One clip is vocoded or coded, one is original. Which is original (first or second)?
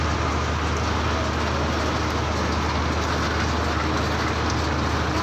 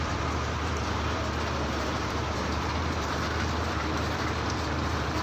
first